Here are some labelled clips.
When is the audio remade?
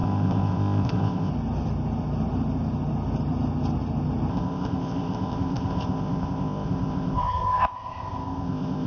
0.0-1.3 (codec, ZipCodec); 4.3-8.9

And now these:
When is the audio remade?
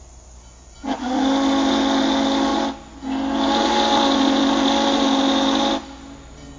none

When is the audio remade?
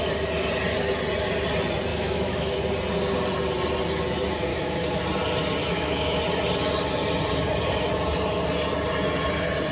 1.9-2.6 (autoencoder, DAC-VAE); 4.5-5.0; 5.6-6.2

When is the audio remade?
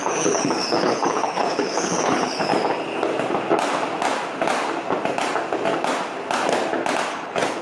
0.0-2.5 (codec, HILCodec); 7.1-7.6